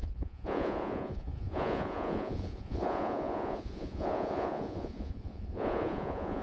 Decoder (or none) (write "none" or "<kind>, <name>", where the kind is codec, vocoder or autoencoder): vocoder, Vocos